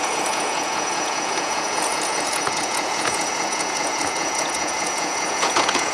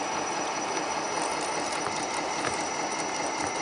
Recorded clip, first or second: second